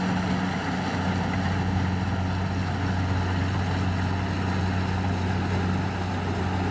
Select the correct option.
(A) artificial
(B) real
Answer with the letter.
B